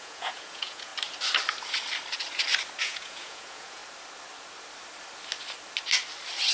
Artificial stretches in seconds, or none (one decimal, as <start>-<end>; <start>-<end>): 0.0-0.9; 2.8-3.8